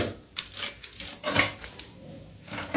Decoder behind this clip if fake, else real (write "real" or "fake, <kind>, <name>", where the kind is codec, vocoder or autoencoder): real